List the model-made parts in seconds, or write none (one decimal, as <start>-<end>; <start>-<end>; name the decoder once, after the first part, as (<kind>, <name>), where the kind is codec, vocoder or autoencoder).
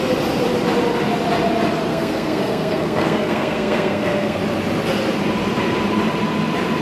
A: 1.9-4.4 (codec, SNAC)